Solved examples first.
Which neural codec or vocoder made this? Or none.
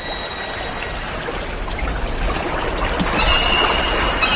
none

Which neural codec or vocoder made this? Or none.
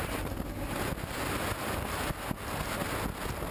none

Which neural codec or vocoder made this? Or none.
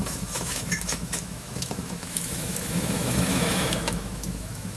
autoencoder, DAC-VAE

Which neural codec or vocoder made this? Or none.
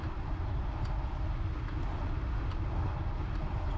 none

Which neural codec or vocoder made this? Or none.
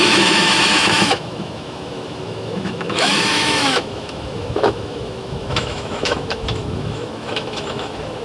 autoencoder, DAC-VAE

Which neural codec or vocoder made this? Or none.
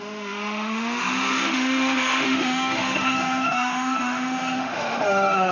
autoencoder, DAC-VAE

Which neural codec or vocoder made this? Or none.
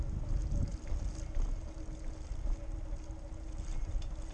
none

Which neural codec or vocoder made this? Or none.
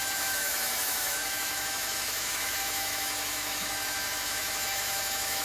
autoencoder, DAC-VAE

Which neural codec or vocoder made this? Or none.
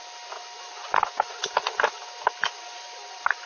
none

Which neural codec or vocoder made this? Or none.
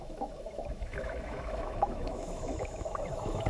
autoencoder, DAC-VAE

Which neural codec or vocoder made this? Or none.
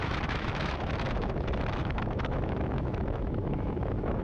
autoencoder, DAC-VAE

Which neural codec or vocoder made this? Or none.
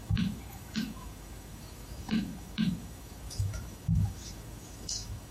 autoencoder, DAC-VAE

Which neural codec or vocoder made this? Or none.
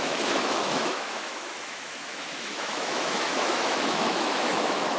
autoencoder, DAC-VAE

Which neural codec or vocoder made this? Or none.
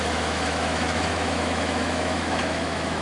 autoencoder, DAC-VAE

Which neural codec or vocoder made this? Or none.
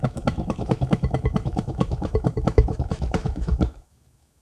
autoencoder, DAC-VAE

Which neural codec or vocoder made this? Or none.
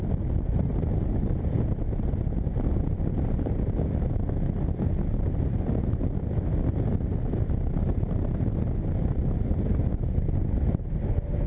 none